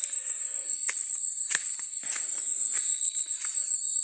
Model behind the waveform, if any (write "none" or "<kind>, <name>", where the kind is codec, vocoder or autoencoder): none